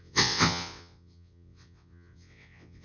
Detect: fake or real fake